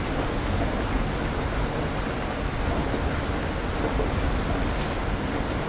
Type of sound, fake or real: real